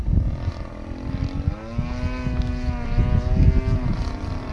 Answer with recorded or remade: recorded